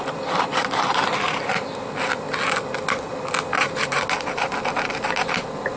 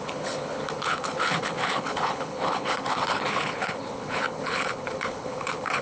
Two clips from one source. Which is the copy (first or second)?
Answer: second